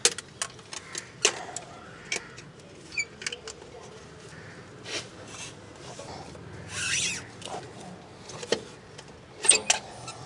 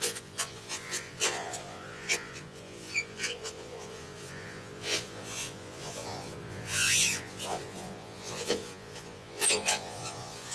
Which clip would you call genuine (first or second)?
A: first